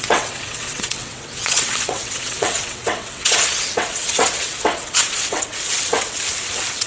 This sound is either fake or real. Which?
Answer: fake